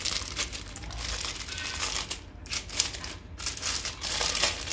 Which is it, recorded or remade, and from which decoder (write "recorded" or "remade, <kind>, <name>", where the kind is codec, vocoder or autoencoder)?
recorded